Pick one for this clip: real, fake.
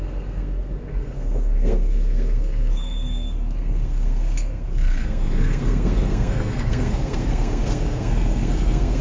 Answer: fake